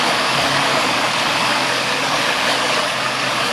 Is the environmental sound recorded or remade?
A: remade